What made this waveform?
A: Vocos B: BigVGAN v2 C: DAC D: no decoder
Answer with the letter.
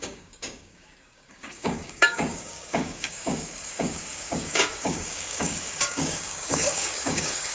C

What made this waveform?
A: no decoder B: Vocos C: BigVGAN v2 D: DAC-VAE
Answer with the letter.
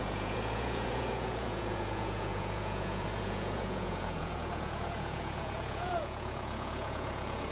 B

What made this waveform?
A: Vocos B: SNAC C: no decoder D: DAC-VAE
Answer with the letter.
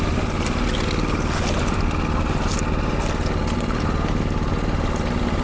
C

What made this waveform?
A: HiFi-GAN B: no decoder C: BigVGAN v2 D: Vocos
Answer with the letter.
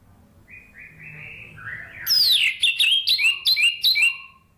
B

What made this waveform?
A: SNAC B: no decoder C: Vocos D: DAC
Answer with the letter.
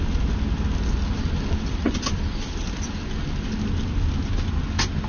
B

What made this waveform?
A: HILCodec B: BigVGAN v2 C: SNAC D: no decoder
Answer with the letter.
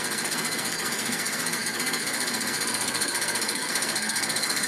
C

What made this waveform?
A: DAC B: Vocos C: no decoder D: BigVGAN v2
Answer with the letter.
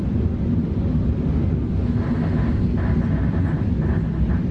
C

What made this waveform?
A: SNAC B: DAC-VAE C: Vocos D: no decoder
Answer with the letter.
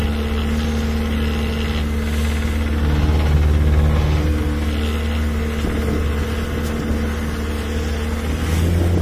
D